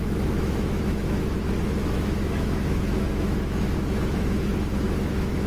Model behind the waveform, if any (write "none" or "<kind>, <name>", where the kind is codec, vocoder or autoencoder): autoencoder, DAC-VAE